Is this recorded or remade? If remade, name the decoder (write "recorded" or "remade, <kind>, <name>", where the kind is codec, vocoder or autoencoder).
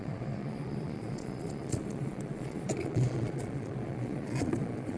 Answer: remade, vocoder, Vocos